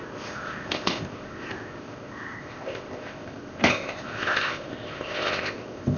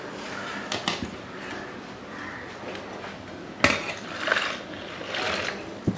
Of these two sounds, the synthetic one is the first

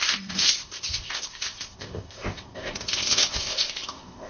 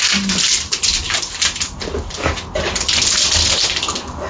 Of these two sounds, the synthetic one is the first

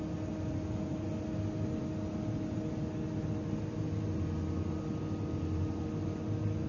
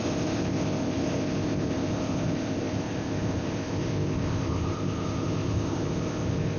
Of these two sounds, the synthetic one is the second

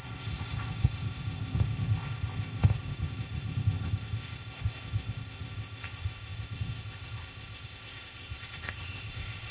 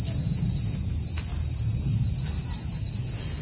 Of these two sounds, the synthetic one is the first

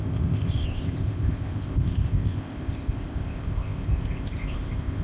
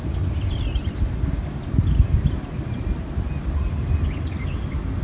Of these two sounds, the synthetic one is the first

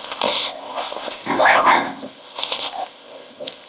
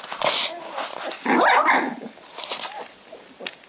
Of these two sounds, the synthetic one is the first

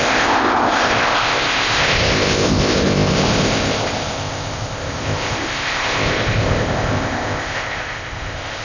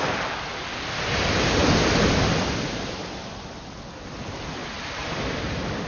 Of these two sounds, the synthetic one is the first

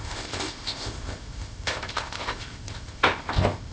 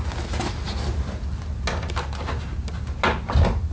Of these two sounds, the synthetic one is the first